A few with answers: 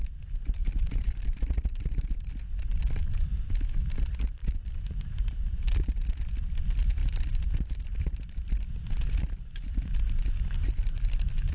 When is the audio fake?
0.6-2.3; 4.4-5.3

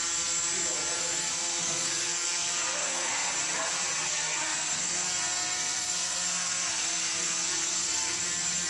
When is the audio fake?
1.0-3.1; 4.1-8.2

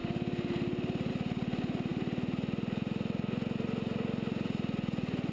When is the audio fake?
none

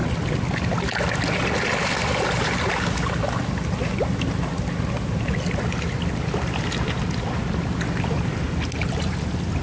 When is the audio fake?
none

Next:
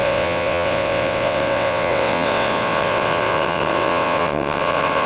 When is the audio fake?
0.0-5.1

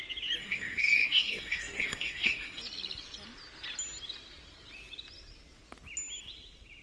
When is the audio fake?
0.4-2.6